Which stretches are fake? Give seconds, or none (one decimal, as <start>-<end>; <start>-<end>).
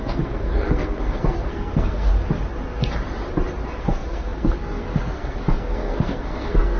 0.0-2.1; 3.8-6.8